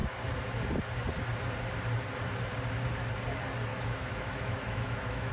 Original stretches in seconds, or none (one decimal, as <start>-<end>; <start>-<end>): 0.0-3.7

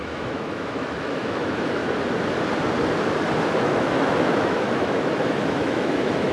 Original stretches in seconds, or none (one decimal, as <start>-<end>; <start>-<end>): 1.8-3.6